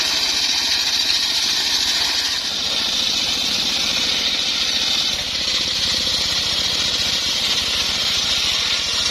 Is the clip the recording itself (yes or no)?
yes